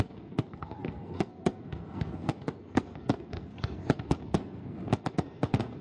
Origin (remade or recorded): remade